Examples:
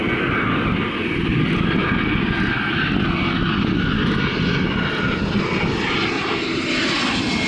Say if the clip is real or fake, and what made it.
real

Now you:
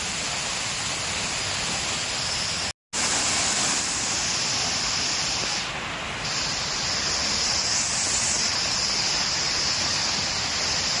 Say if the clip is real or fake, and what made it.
real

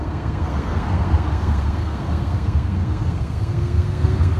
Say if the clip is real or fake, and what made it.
fake, codec, SNAC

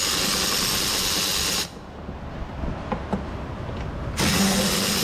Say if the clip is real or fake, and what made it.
real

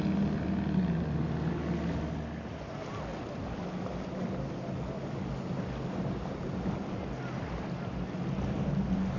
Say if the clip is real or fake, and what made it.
real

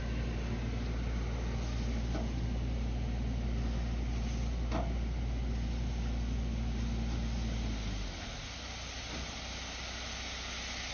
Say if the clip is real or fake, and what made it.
real